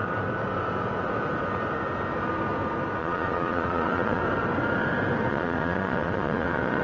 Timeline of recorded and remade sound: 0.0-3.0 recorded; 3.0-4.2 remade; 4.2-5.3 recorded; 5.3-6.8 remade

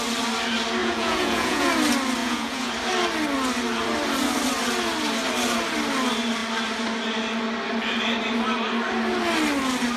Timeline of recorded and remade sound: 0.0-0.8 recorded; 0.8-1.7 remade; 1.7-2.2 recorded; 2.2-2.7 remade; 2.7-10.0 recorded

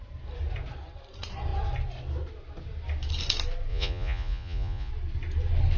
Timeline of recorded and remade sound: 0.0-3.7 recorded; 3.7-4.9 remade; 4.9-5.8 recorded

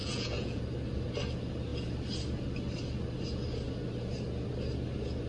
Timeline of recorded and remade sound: 0.0-0.6 remade; 0.6-5.3 recorded

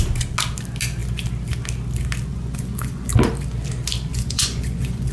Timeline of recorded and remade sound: 0.0-2.3 recorded; 2.3-3.1 remade; 3.1-4.1 recorded; 4.1-5.1 remade

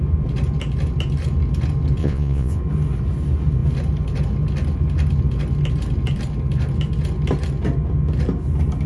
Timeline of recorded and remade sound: 0.0-2.0 recorded; 2.0-2.6 remade; 2.6-8.9 recorded

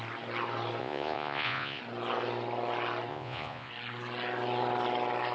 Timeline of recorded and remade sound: 0.0-0.8 recorded; 0.8-1.8 remade; 1.8-3.1 recorded; 3.1-3.7 remade; 3.7-5.3 recorded